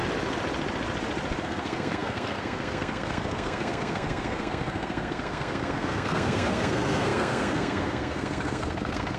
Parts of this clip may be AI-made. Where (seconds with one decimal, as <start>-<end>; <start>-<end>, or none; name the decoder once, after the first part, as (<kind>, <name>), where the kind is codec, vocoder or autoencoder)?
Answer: 1.4-9.2 (codec, SNAC)